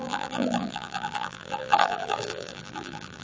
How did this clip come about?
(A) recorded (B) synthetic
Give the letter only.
B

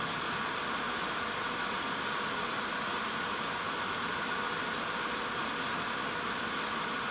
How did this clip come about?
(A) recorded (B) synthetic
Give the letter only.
A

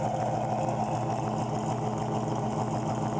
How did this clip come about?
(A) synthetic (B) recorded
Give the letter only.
B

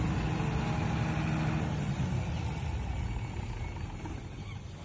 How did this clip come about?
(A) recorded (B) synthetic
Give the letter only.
A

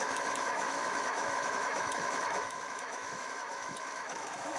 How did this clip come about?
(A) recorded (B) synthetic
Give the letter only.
B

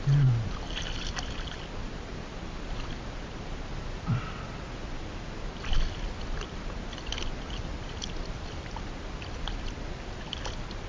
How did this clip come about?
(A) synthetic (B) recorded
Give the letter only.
B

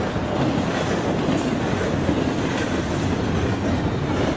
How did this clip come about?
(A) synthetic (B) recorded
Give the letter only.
B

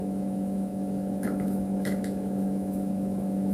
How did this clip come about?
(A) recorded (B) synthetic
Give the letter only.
B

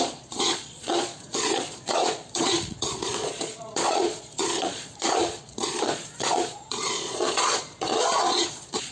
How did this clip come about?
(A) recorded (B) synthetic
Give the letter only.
B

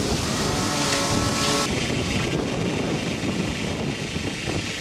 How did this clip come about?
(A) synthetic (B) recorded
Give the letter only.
B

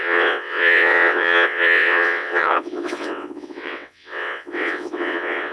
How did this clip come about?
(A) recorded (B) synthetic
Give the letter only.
B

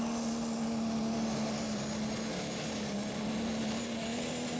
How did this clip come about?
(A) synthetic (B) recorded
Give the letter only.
B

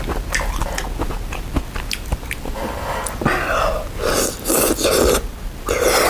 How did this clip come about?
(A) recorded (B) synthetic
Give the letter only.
A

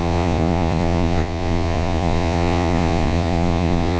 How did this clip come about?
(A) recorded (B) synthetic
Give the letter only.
B